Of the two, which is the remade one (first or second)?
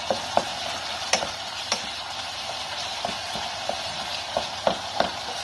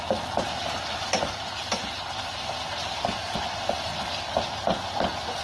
first